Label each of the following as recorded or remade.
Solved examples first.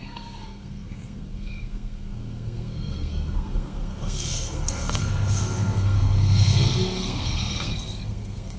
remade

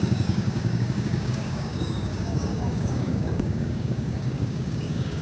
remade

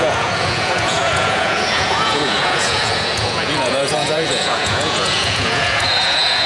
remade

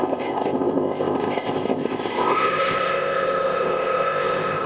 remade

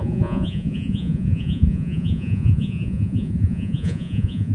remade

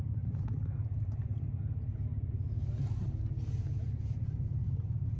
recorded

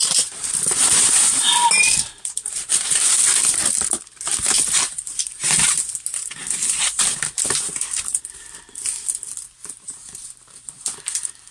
remade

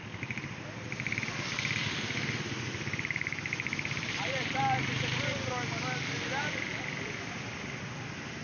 recorded